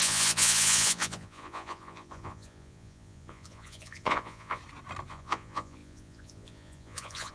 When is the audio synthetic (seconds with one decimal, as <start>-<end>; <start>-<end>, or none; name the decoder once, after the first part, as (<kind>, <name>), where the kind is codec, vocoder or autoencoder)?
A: 0.0-4.6 (vocoder, Vocos); 5.1-7.3